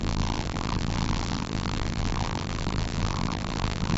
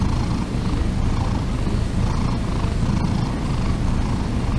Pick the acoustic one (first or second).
second